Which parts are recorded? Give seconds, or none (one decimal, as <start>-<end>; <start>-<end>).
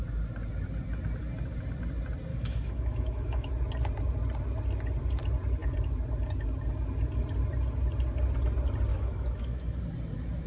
0.0-2.3; 3.5-8.9; 9.8-10.5